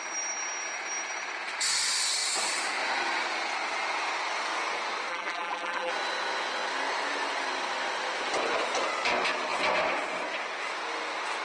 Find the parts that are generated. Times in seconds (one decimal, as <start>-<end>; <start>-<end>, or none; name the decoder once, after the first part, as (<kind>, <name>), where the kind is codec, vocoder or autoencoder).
5.1-5.9 (vocoder, BigVGAN v2)

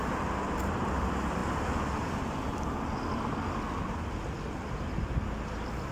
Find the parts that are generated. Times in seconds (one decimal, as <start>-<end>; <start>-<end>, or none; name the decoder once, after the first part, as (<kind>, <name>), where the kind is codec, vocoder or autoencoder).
none

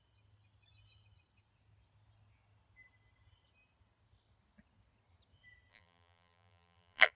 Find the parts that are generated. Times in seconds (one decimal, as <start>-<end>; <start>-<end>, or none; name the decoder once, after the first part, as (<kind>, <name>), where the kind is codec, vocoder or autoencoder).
5.7-7.1 (vocoder, BigVGAN v2)

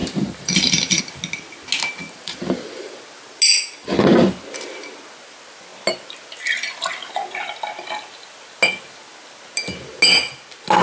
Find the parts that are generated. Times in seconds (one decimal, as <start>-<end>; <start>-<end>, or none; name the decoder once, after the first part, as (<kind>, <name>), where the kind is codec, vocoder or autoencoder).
0.0-1.0 (vocoder, BigVGAN v2); 2.0-3.0

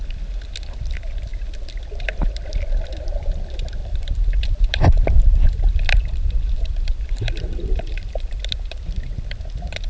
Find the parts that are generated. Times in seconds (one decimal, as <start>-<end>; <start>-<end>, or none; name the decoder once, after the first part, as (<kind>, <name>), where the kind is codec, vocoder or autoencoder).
3.8-8.4 (vocoder, BigVGAN v2)

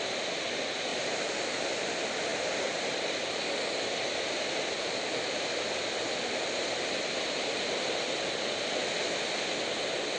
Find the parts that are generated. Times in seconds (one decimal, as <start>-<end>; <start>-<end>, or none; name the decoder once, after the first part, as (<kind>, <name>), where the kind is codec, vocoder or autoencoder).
0.9-1.6 (vocoder, BigVGAN v2)